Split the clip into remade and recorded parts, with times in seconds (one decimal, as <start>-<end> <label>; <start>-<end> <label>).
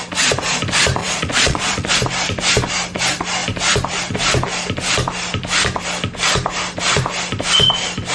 0.0-1.0 recorded; 1.0-1.9 remade; 1.9-8.1 recorded